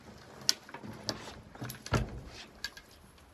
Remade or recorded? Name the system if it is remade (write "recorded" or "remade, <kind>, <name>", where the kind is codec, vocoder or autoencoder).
recorded